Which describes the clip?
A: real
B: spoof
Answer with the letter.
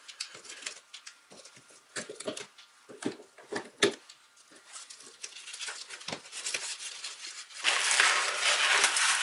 A